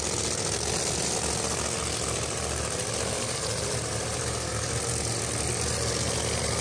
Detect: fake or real real